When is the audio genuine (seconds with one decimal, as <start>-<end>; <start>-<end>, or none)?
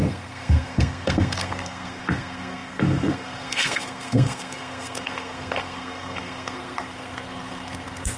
none